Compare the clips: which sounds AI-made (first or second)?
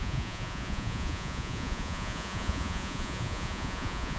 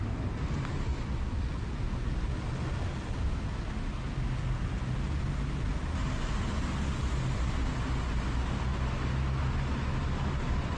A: first